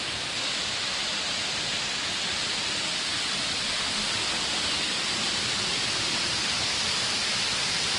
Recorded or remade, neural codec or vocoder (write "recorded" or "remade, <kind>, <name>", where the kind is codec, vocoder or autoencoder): recorded